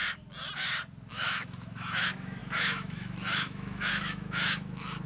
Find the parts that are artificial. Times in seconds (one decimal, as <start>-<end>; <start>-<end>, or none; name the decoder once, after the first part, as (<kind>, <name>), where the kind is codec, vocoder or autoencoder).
1.1-5.1 (autoencoder, DAC-VAE)